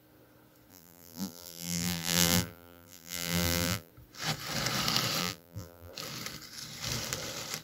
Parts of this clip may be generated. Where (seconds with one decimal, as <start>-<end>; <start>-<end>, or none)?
0.7-3.9; 5.2-5.9